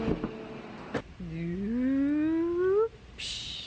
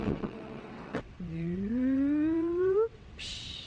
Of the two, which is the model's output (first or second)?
second